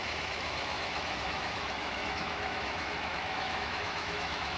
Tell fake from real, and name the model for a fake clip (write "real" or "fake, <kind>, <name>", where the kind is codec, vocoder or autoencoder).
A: fake, autoencoder, DAC-VAE